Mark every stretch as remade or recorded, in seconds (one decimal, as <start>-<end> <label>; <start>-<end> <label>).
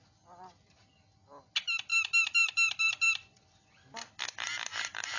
0.0-5.2 recorded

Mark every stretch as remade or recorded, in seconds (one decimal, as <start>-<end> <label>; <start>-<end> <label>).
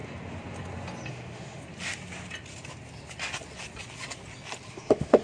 0.0-1.1 recorded; 1.1-1.6 remade; 1.6-4.7 recorded; 4.7-5.2 remade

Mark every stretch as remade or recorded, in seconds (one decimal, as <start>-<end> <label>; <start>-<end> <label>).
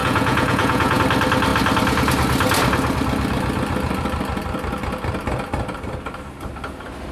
0.0-1.0 remade; 1.0-7.1 recorded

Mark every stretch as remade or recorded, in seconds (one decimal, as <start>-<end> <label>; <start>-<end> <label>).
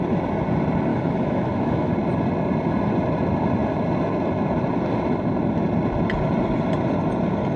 0.0-0.9 recorded; 0.9-1.9 remade; 1.9-7.6 recorded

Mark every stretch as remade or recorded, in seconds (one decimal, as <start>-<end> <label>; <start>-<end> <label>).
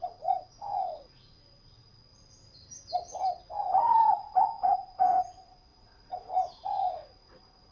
0.0-2.1 remade; 2.1-3.6 recorded; 3.6-7.7 remade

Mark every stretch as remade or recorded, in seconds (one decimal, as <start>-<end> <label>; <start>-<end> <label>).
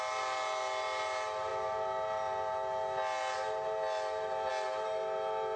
0.0-5.6 recorded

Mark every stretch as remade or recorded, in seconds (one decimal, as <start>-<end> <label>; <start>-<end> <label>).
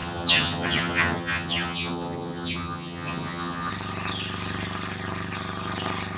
0.0-3.7 remade; 3.7-6.2 recorded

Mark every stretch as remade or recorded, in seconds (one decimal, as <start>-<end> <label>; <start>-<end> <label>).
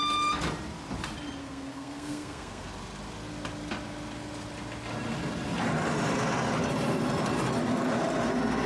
0.0-1.4 recorded; 1.4-2.7 remade; 2.7-8.7 recorded